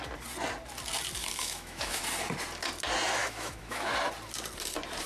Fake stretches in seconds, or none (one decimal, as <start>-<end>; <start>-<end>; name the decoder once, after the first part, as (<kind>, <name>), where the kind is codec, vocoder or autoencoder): 1.2-2.0 (autoencoder, DAC-VAE); 3.2-3.9